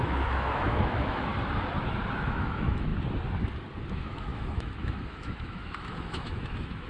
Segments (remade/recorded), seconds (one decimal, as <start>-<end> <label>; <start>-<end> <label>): 0.0-1.3 remade; 1.3-2.1 recorded; 2.1-2.9 remade; 2.9-3.9 recorded; 3.9-6.9 remade